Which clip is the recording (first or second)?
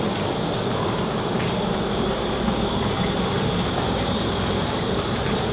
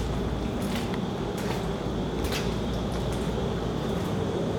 second